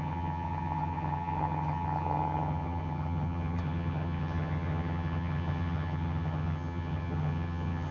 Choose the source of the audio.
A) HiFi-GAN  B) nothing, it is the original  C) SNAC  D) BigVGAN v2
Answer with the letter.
A